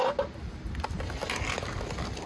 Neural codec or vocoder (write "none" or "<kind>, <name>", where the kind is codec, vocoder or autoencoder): none